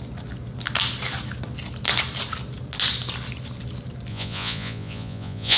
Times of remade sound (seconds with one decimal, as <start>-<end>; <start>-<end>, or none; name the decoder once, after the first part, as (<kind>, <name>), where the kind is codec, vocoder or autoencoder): 4.1-5.6 (vocoder, Vocos)